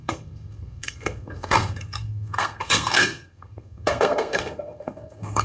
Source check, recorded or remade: remade